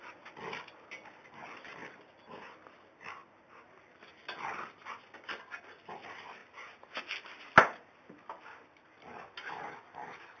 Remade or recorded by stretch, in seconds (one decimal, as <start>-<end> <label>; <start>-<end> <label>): 0.0-10.4 recorded